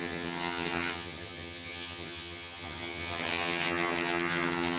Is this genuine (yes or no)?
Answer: no